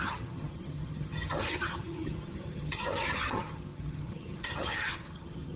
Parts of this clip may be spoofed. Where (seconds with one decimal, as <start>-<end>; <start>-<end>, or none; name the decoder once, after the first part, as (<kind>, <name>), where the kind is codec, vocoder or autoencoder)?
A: 0.0-5.6 (vocoder, HiFi-GAN)